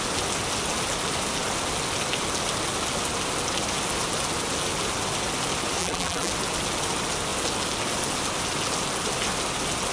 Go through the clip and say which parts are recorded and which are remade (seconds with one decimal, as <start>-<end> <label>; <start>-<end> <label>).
0.0-5.8 recorded; 5.8-6.3 remade; 6.3-9.9 recorded